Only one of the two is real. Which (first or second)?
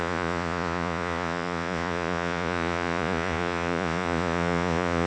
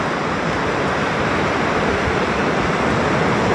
second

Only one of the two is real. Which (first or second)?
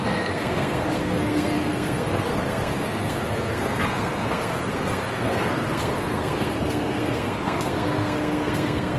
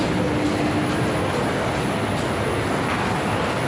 second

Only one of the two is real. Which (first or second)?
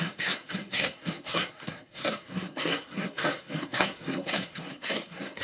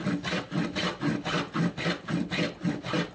second